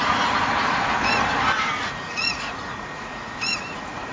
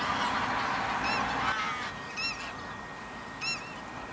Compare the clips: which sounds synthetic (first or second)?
first